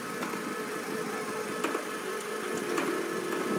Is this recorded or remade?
recorded